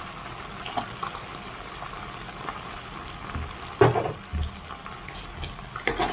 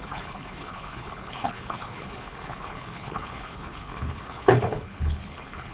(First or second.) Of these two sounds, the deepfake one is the second